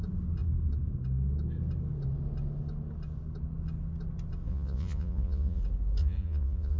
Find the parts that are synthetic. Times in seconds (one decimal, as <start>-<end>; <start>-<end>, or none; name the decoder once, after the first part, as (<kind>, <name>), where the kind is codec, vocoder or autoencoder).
4.5-5.6 (vocoder, Vocos); 6.0-6.8